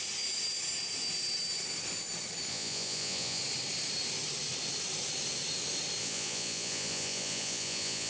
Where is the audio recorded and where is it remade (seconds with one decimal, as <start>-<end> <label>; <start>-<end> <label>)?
0.0-2.5 recorded; 2.5-3.4 remade; 3.4-6.0 recorded; 6.0-8.1 remade